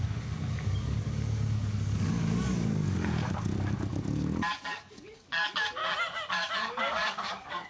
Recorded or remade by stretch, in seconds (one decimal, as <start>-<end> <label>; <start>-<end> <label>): 0.0-5.8 remade; 5.8-6.3 recorded; 6.3-7.7 remade